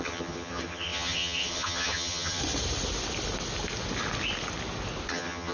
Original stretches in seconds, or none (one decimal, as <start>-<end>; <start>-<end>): 2.4-5.1